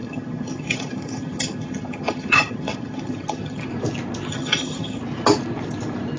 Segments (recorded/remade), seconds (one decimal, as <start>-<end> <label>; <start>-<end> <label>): 0.0-3.7 remade; 3.7-4.3 recorded; 4.3-5.0 remade; 5.0-6.2 recorded